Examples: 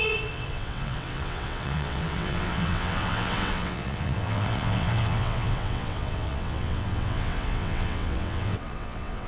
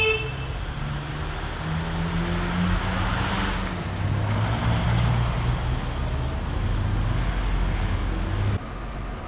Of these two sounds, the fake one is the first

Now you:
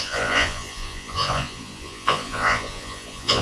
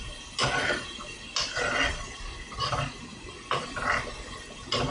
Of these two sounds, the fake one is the first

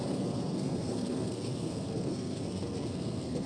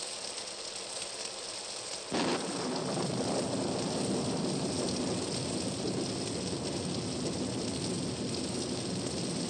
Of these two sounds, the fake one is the first